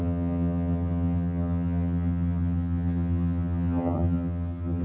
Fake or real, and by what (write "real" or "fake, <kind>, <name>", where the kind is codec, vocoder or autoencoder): fake, vocoder, HiFi-GAN